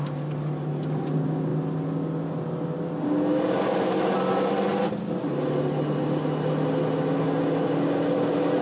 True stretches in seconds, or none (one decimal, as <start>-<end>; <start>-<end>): 0.0-8.6